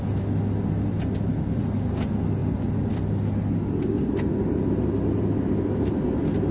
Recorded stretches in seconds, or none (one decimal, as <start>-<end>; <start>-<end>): 0.0-6.5